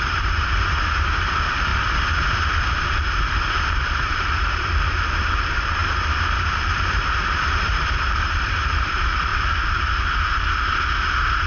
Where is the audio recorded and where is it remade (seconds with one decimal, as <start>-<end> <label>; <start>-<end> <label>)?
0.0-1.7 remade; 1.7-3.4 recorded; 3.4-9.3 remade; 9.3-11.5 recorded